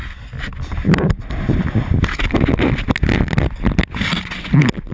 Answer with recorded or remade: recorded